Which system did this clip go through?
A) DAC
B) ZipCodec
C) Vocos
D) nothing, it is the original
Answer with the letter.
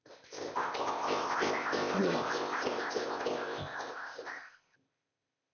B